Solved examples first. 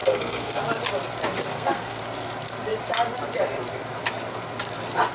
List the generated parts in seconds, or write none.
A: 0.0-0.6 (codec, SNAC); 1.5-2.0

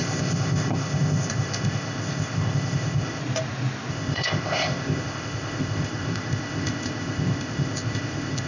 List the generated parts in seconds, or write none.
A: 0.0-3.2 (codec, ZipCodec); 3.9-8.5

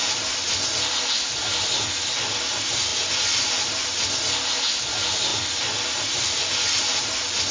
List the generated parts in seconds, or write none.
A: 0.0-0.9 (vocoder, BigVGAN v2); 2.9-4.8; 5.3-6.8

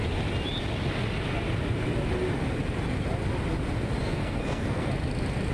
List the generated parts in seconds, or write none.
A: 4.0-4.9 (codec, SNAC)

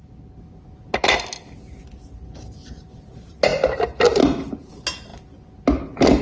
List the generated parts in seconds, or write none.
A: none